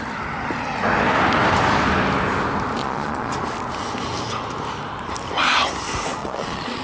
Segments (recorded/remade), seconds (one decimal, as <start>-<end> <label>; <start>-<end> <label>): 0.0-2.8 recorded; 2.8-3.3 remade; 3.3-6.2 recorded; 6.2-6.8 remade